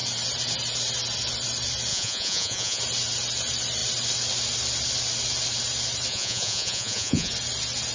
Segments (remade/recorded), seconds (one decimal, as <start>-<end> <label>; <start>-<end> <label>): 0.0-1.9 recorded; 1.9-2.8 remade; 2.8-6.1 recorded; 6.1-7.3 remade; 7.3-7.9 recorded